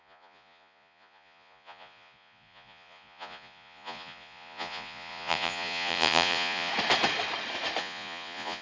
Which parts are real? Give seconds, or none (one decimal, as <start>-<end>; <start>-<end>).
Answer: 6.7-7.8